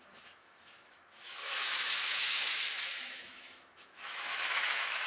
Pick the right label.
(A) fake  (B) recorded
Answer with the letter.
A